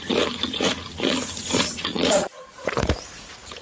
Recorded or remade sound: remade